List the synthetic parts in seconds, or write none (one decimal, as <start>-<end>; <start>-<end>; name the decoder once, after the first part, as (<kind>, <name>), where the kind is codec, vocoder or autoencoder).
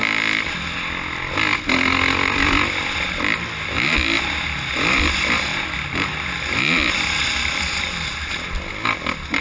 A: none